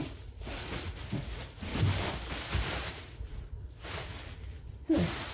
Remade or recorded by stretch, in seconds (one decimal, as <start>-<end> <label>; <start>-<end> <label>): 0.0-1.7 remade; 1.7-2.9 recorded; 2.9-4.1 remade; 4.1-4.7 recorded; 4.7-5.3 remade